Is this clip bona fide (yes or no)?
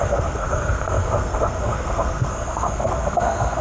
no